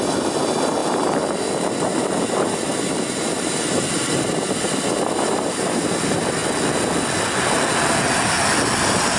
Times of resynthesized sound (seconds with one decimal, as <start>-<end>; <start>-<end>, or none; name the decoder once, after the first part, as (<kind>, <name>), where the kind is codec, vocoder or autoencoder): 0.0-6.4 (vocoder, BigVGAN v2)